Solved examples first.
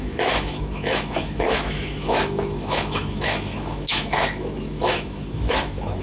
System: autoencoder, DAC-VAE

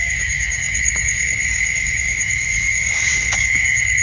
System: codec, DAC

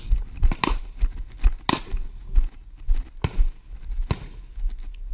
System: none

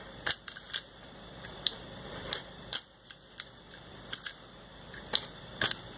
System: vocoder, BigVGAN v2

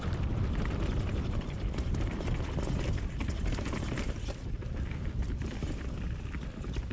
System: vocoder, BigVGAN v2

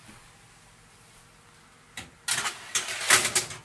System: none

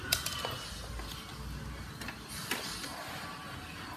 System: none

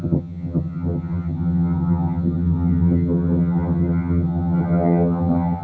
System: vocoder, HiFi-GAN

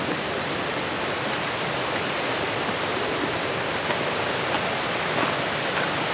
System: none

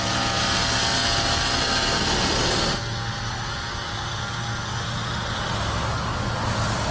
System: none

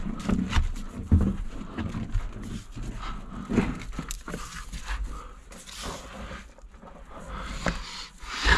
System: none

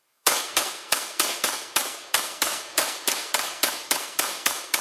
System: codec, SNAC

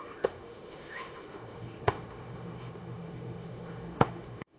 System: autoencoder, DAC-VAE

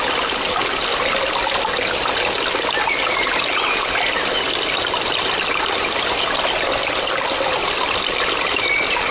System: none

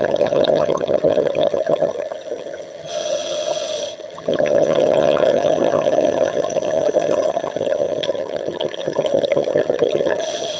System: vocoder, HiFi-GAN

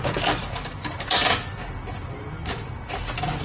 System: none